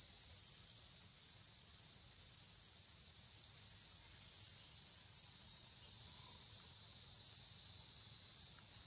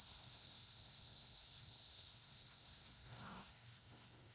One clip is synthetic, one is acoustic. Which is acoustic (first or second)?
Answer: first